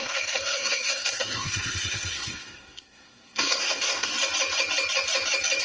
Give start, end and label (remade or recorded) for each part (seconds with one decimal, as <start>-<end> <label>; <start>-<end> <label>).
0.0-4.1 remade; 4.1-5.6 recorded